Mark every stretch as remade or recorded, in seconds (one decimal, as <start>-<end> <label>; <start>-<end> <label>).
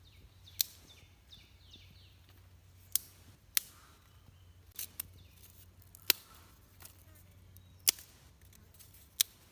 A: 0.0-9.5 recorded